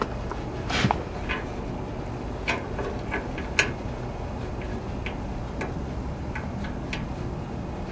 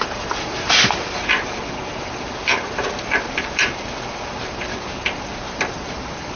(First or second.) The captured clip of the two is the first